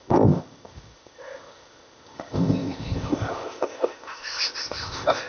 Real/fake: fake